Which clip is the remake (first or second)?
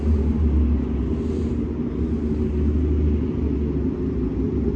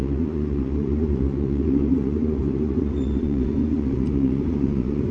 second